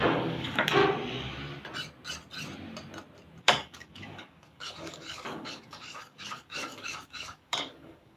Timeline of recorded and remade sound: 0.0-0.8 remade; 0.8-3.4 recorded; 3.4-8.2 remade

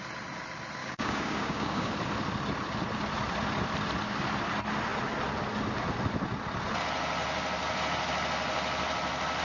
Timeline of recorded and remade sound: 0.0-0.8 recorded; 0.8-1.9 remade; 1.9-9.4 recorded